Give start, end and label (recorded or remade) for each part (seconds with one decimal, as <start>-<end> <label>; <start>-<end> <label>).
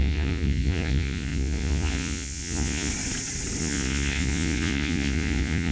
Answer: 0.0-2.9 remade; 2.9-3.6 recorded; 3.6-5.7 remade